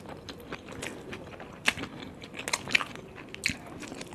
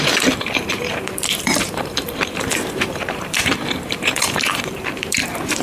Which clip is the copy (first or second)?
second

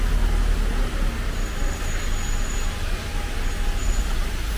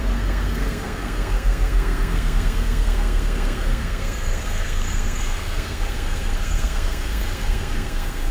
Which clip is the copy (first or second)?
second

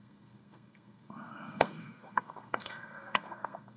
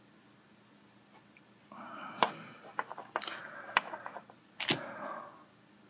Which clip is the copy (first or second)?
first